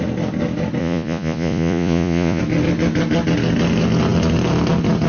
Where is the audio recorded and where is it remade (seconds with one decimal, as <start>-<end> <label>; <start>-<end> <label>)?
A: 0.0-0.8 recorded; 0.8-2.4 remade; 2.4-5.1 recorded